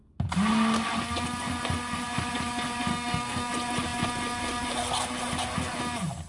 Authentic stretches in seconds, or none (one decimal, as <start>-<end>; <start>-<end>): 0.0-2.9; 3.5-6.3